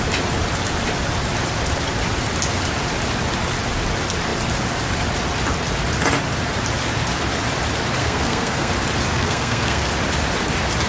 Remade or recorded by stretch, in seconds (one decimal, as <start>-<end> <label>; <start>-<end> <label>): 0.0-8.0 recorded; 8.0-8.7 remade; 8.7-9.1 recorded; 9.1-9.9 remade; 9.9-10.9 recorded